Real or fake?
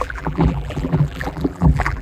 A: fake